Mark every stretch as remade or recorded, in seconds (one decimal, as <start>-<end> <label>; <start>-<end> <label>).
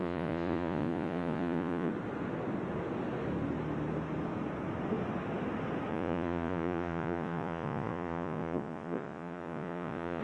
0.0-1.9 remade; 1.9-5.9 recorded; 5.9-10.2 remade